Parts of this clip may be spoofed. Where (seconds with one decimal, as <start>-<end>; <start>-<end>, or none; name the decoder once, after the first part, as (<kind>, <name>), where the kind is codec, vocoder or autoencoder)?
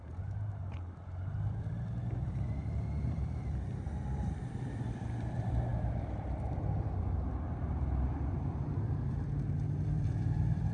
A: 0.0-10.7 (vocoder, BigVGAN v2)